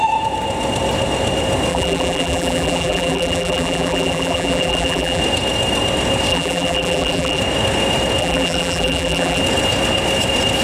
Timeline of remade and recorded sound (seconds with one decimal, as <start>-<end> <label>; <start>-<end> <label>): 0.0-1.7 recorded; 1.7-5.2 remade; 5.2-6.3 recorded; 6.3-7.4 remade; 7.4-8.2 recorded; 8.2-9.4 remade; 9.4-10.6 recorded